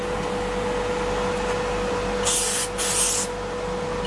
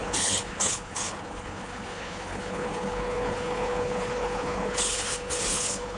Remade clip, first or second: second